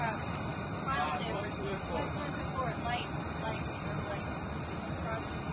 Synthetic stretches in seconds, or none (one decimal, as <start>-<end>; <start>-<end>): 0.5-2.4